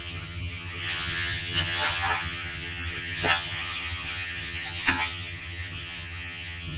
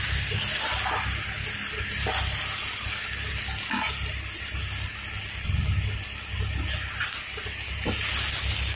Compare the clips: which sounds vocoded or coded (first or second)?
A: first